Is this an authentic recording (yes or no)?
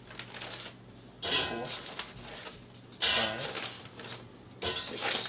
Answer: yes